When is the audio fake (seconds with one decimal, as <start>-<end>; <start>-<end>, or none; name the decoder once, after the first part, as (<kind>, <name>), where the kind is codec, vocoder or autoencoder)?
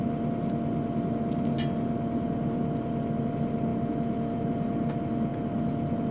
none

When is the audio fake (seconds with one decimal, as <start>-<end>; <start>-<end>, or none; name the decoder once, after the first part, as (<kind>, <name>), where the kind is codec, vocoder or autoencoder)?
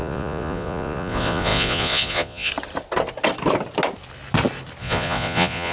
0.0-2.5 (vocoder, Vocos); 4.8-5.7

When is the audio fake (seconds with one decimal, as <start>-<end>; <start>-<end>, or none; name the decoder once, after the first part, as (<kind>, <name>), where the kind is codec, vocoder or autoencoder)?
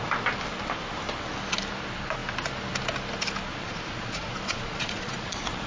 3.6-5.7 (vocoder, Vocos)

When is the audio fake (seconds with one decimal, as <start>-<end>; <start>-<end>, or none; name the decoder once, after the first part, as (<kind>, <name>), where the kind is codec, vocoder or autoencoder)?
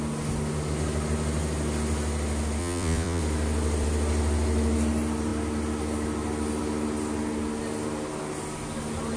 2.6-3.2 (vocoder, Vocos)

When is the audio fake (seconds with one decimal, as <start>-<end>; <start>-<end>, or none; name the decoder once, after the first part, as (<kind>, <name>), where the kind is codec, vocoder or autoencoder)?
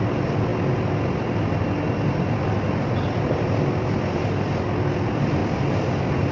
none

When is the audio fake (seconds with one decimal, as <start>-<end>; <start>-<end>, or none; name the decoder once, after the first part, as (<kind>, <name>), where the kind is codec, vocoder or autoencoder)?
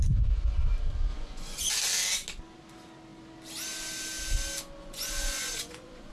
1.1-1.7 (vocoder, Vocos); 4.8-6.1